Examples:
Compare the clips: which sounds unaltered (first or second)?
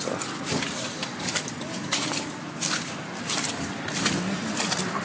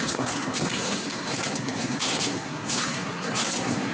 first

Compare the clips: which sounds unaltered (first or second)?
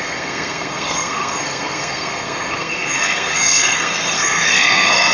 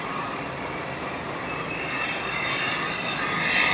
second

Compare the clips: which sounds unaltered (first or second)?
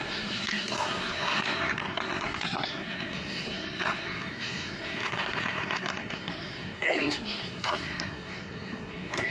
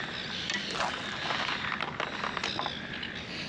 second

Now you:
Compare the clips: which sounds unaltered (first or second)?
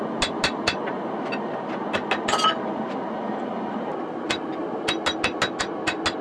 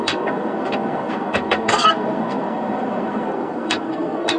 first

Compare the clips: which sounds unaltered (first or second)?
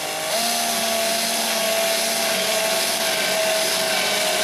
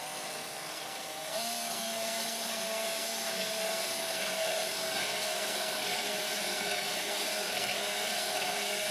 first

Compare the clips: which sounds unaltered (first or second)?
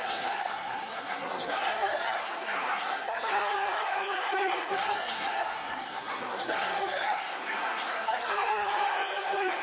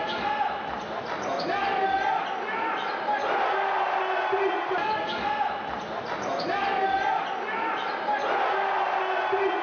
second